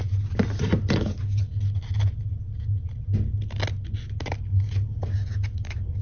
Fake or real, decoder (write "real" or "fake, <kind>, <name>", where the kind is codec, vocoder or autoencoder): real